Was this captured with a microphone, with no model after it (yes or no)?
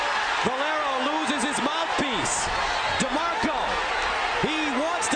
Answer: yes